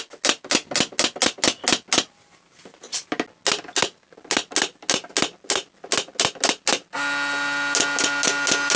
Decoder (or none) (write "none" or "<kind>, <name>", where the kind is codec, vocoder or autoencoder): none